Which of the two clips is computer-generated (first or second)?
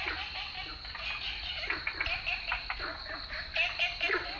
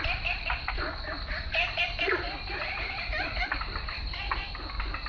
second